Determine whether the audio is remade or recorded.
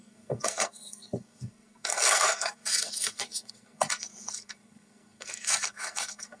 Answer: remade